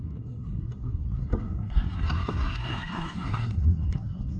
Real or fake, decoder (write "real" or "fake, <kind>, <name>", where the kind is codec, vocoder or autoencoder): fake, codec, SNAC